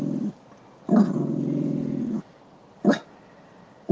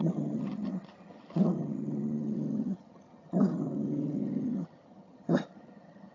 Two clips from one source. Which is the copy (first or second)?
second